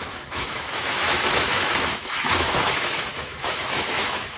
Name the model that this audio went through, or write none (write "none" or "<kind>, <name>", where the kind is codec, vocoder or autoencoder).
autoencoder, DAC-VAE